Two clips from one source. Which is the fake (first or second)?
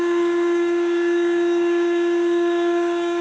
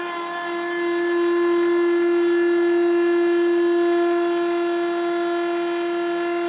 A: first